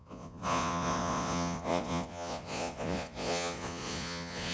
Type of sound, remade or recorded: remade